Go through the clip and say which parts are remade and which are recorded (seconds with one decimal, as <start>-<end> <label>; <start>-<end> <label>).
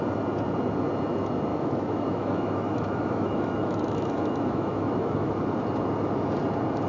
0.0-1.5 recorded; 1.5-5.4 remade; 5.4-6.9 recorded